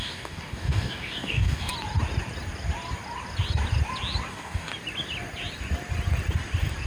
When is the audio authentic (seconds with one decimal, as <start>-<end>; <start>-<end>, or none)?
1.7-4.3; 4.7-6.9